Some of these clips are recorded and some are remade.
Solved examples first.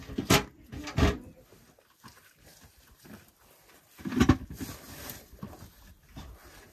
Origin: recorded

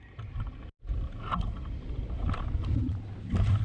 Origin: recorded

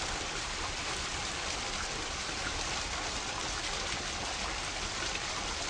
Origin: recorded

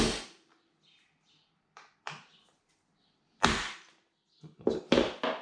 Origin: remade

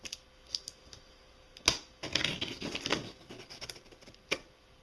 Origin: recorded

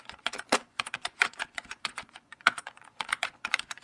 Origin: remade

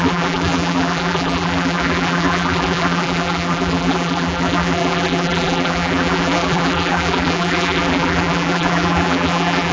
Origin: remade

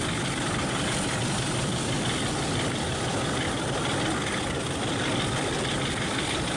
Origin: recorded